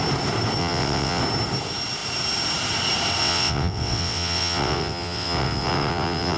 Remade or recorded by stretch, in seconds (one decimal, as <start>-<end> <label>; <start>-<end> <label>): 0.0-0.6 recorded; 0.6-1.2 remade; 1.2-3.2 recorded; 3.2-6.4 remade